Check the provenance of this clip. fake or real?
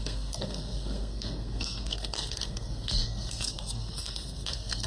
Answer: fake